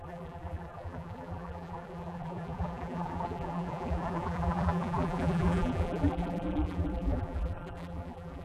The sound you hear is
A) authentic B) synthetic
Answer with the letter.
B